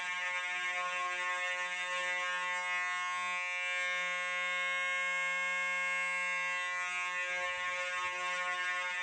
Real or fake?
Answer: real